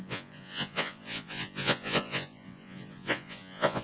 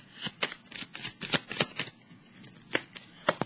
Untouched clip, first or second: second